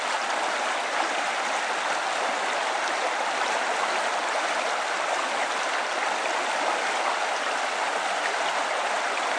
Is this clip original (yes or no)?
yes